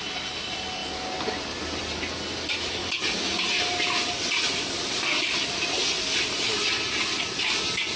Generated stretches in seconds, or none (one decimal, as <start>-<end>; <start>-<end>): none